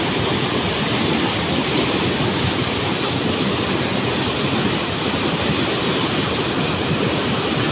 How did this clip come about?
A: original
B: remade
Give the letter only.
A